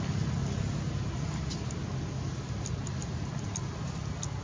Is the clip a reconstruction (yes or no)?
no